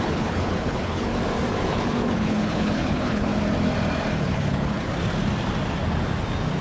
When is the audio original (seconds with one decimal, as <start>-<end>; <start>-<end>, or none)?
1.1-1.7; 3.3-4.2; 4.9-6.6